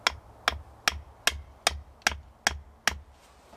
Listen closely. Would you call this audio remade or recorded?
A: recorded